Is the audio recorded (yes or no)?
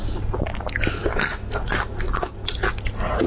yes